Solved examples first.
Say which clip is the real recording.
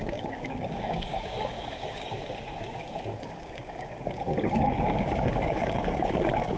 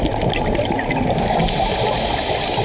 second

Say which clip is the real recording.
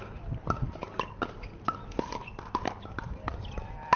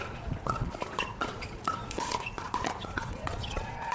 first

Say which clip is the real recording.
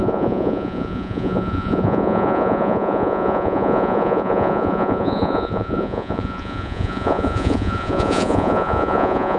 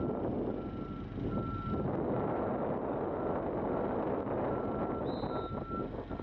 second